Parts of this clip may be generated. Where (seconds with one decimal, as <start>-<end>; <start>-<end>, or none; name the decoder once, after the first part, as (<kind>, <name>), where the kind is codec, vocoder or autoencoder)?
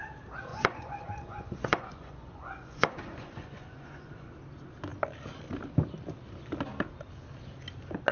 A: 0.5-4.3 (vocoder, Vocos)